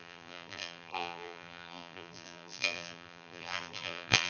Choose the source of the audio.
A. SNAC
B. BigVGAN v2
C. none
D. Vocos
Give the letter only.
B